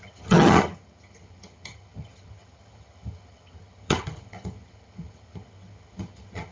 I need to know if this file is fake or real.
fake